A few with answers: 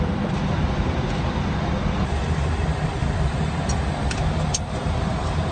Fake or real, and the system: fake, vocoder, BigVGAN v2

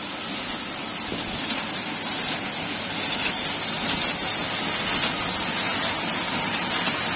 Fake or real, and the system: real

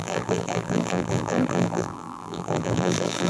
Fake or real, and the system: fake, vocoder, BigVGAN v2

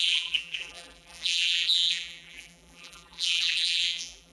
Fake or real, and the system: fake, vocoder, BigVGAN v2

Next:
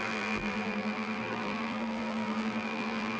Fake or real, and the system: fake, vocoder, BigVGAN v2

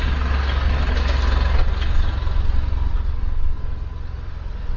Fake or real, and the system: real